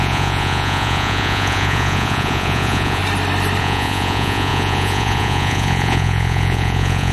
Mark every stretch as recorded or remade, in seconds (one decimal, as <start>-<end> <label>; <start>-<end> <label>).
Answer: 0.0-3.0 remade; 3.0-3.6 recorded; 3.6-7.1 remade